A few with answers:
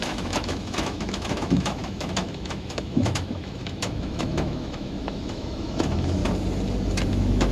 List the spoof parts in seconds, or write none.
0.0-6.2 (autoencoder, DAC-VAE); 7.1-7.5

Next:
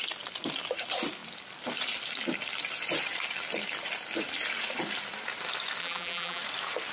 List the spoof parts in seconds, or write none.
5.8-6.4 (vocoder, BigVGAN v2)

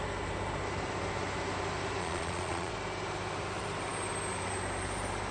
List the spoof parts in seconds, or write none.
2.0-2.7 (vocoder, Vocos)

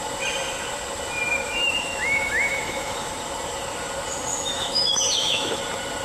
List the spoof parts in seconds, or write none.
1.3-3.1 (autoencoder, DAC-VAE); 4.3-5.6

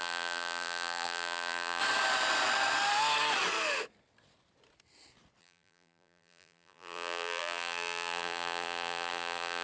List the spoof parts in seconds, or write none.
0.0-1.8 (vocoder, BigVGAN v2); 5.4-9.6

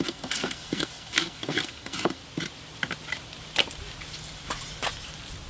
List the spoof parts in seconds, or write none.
0.0-2.2 (codec, SNAC)

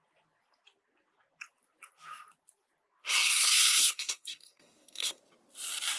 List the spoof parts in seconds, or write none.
3.0-5.2 (codec, SNAC)

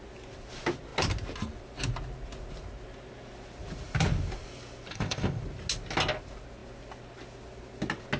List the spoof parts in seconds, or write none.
4.9-5.4 (codec, ZipCodec)